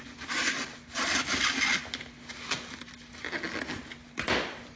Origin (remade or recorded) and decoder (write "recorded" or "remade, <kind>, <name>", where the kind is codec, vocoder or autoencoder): recorded